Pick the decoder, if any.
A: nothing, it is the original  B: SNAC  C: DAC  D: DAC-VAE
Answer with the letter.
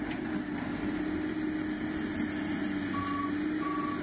A